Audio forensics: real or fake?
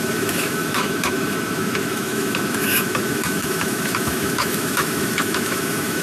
fake